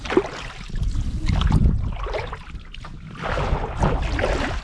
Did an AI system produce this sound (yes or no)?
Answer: no